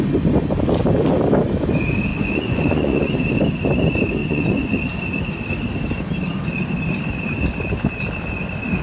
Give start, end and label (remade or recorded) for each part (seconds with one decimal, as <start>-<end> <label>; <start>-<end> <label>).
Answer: 0.0-2.1 recorded; 2.1-3.1 remade; 3.1-4.2 recorded; 4.2-4.8 remade; 4.8-8.8 recorded